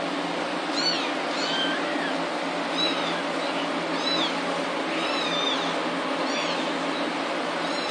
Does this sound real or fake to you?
real